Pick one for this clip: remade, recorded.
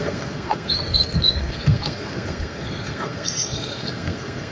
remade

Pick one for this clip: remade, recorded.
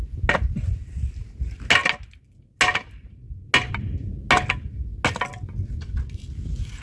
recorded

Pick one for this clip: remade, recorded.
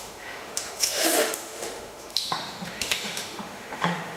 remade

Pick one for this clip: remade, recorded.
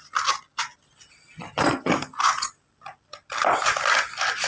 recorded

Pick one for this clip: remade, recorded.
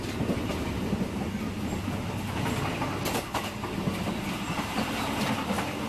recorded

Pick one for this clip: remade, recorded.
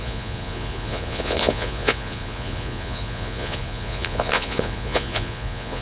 remade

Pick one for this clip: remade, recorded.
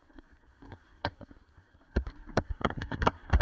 remade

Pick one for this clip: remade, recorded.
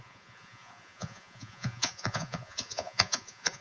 remade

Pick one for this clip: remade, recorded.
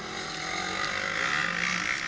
recorded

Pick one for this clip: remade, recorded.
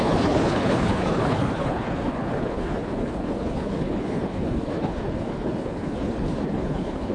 remade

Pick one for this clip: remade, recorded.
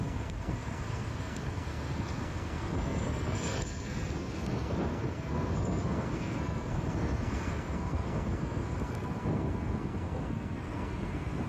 remade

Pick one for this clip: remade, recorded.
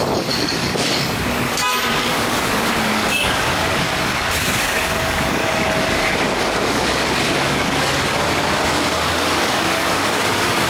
remade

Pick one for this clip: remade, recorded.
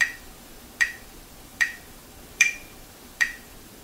remade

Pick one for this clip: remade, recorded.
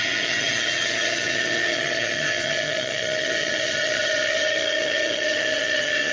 remade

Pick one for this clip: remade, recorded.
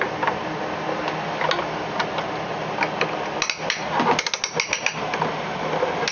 recorded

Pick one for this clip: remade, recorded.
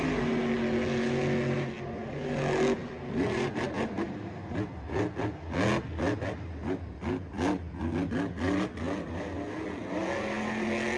recorded